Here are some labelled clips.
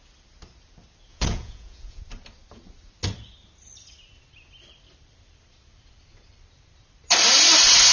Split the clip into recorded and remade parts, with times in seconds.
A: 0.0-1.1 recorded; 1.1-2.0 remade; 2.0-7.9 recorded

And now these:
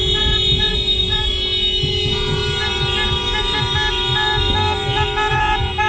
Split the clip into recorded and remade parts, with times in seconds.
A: 0.0-1.2 remade; 1.2-1.9 recorded; 1.9-2.4 remade; 2.4-5.3 recorded; 5.3-5.9 remade

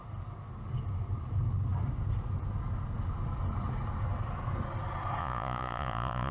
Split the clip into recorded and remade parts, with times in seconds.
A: 0.0-5.2 recorded; 5.2-6.3 remade

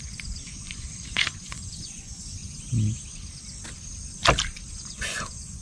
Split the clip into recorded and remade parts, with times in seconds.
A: 0.0-2.4 remade; 2.4-4.7 recorded; 4.7-5.6 remade

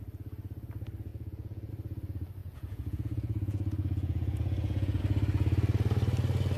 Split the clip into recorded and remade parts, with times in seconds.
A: 0.0-1.1 recorded; 1.1-1.7 remade; 1.7-2.4 recorded; 2.4-5.0 remade; 5.0-6.6 recorded

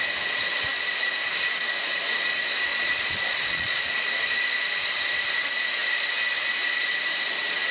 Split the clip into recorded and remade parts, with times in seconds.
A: 0.0-2.7 recorded; 2.7-3.8 remade; 3.8-7.7 recorded

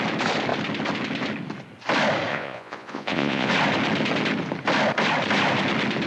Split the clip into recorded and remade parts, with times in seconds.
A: 0.0-2.3 recorded; 2.3-3.5 remade; 3.5-6.1 recorded